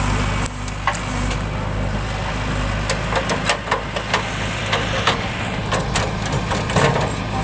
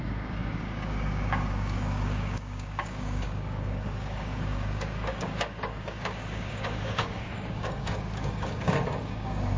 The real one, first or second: first